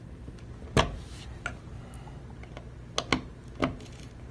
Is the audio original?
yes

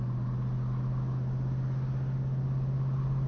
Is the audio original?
yes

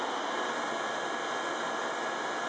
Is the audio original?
yes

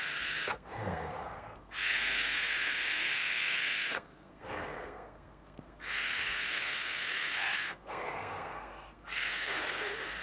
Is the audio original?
no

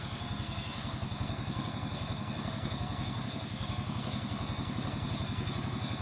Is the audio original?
no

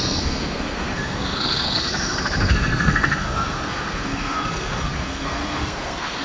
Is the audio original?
no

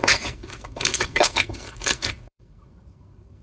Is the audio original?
no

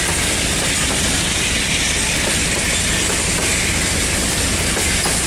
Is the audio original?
yes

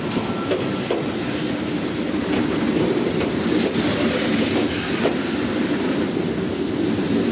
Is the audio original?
yes